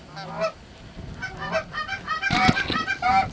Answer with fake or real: real